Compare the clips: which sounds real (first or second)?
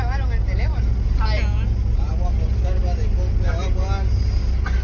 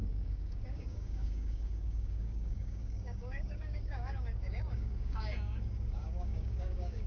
first